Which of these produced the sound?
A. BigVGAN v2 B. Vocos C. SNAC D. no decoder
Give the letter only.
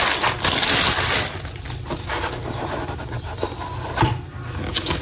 D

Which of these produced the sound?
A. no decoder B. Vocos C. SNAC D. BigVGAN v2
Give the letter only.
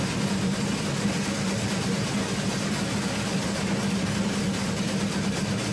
A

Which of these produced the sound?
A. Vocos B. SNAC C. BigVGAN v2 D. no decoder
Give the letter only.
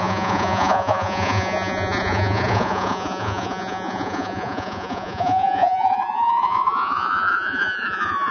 A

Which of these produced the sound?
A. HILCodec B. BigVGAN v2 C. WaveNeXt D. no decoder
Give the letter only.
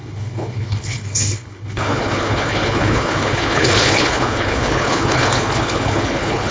A